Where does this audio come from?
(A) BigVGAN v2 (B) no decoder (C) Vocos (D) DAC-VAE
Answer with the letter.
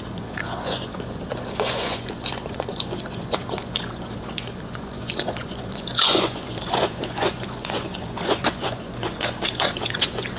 C